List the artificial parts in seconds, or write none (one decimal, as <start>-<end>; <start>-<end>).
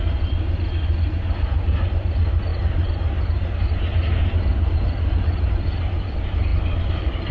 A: none